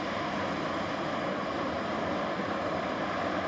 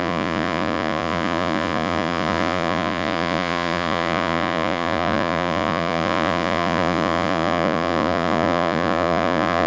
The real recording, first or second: first